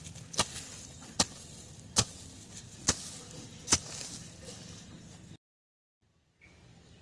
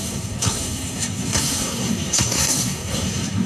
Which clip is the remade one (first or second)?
second